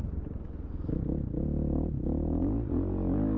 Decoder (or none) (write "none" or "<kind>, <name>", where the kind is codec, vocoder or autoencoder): none